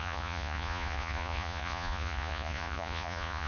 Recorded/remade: remade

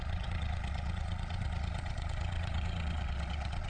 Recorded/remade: remade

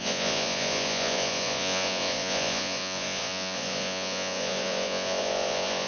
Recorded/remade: remade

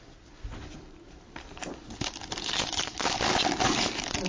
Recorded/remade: recorded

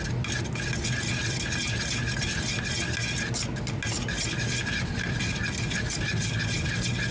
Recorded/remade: recorded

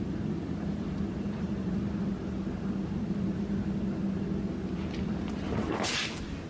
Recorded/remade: recorded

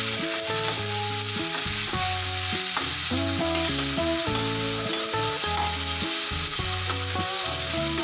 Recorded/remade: recorded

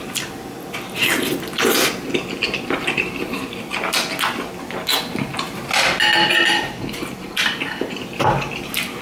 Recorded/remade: recorded